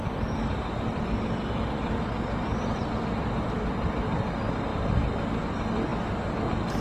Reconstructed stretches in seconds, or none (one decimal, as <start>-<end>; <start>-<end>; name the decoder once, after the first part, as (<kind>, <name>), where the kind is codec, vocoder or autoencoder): none